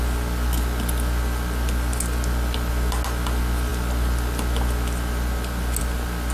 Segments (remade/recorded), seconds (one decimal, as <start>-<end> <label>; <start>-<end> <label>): 0.0-6.3 recorded

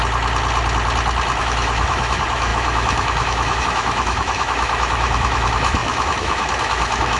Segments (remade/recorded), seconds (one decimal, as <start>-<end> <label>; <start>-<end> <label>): 0.0-1.4 recorded; 1.4-7.2 remade